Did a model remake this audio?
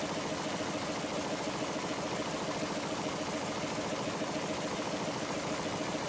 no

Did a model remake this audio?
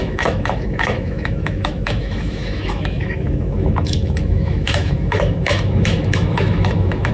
yes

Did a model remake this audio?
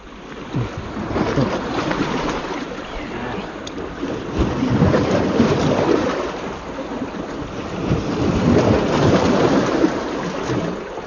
no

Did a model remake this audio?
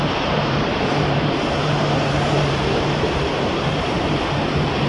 yes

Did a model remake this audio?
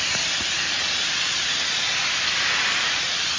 no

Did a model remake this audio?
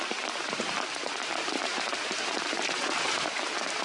yes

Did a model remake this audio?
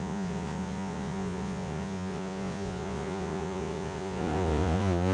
yes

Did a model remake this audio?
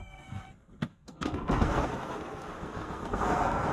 yes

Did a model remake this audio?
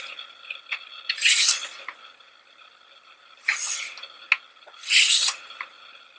no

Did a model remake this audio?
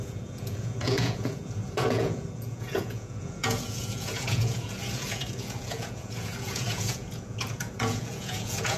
yes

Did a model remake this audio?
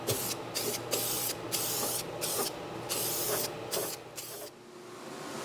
no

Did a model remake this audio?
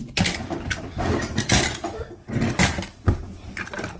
no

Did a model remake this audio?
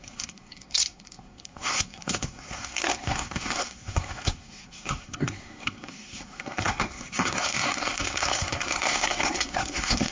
yes